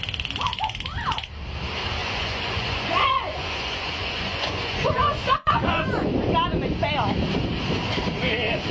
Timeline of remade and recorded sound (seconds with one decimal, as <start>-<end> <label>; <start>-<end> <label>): 0.0-2.0 recorded; 2.0-6.1 remade; 6.1-8.7 recorded